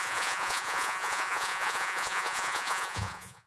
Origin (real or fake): fake